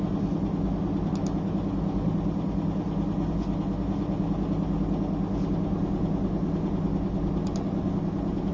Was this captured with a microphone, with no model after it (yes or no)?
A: yes